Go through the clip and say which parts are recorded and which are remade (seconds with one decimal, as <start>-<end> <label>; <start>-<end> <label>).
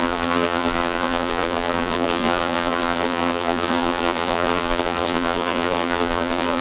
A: 0.0-6.6 remade